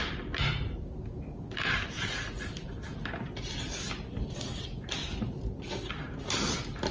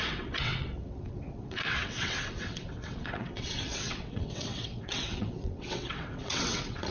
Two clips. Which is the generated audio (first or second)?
second